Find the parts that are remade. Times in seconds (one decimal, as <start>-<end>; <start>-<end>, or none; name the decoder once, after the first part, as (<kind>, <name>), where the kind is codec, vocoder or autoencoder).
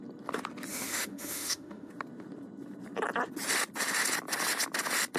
0.7-1.9 (autoencoder, DAC-VAE)